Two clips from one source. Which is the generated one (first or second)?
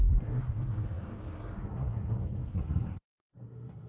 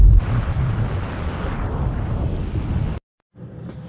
first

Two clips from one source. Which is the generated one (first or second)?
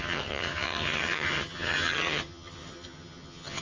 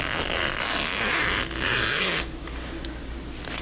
first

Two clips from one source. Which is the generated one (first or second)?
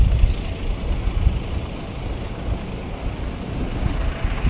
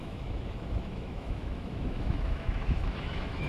second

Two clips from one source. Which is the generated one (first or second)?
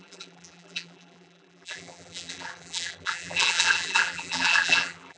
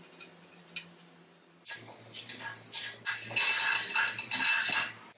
first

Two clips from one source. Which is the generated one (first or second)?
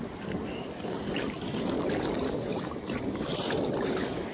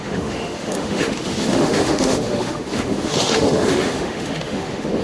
second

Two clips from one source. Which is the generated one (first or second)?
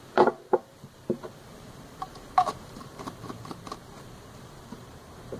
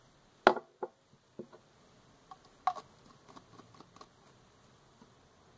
first